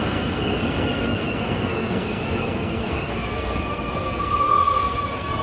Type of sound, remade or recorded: remade